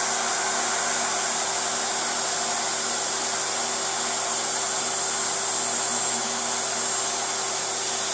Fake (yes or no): no